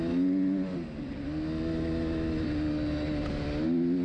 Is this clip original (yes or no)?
yes